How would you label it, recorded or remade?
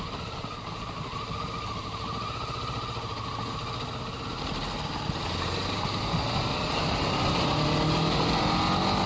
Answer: recorded